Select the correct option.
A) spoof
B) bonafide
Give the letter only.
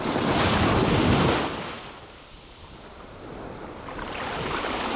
A